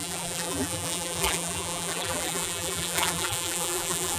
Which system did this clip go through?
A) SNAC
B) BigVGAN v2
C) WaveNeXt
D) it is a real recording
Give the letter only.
B